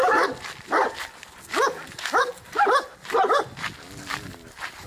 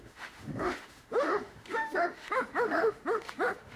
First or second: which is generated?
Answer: second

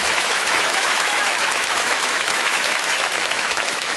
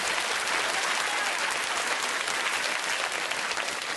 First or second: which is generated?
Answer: first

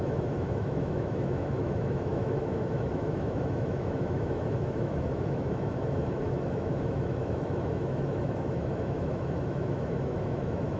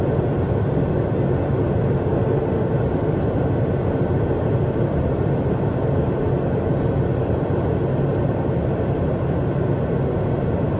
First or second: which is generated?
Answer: first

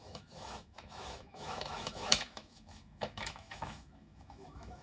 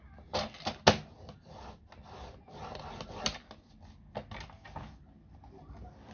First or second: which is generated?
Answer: first